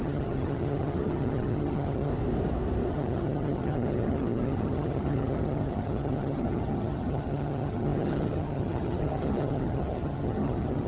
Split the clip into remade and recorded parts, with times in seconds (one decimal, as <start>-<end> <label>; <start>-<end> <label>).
0.0-2.1 remade; 2.1-2.9 recorded; 2.9-10.9 remade